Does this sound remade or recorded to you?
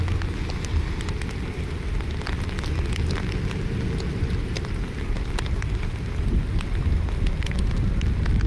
recorded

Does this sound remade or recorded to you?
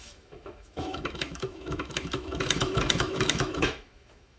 remade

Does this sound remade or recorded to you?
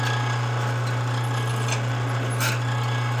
recorded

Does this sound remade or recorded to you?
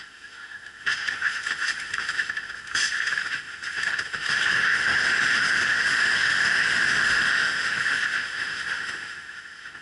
remade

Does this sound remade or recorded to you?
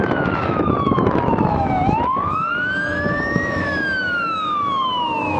remade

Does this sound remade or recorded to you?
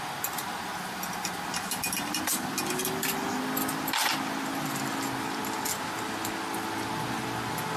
recorded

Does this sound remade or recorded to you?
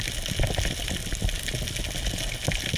recorded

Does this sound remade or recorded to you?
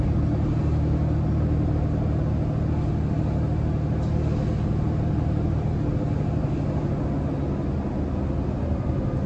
recorded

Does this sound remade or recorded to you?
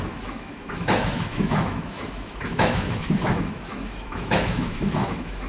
remade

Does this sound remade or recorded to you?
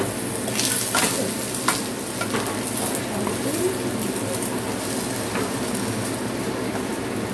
recorded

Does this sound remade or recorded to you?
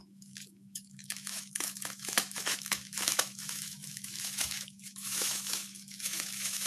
remade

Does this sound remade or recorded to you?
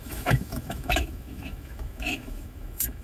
remade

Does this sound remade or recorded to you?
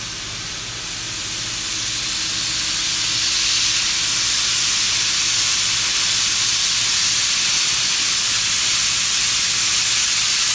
recorded